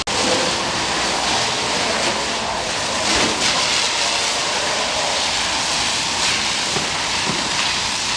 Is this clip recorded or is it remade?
recorded